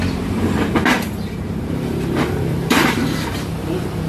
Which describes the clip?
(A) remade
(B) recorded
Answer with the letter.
A